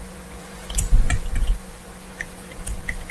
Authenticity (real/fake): fake